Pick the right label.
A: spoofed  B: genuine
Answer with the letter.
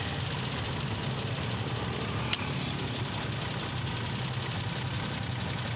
B